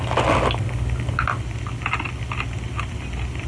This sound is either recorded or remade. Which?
recorded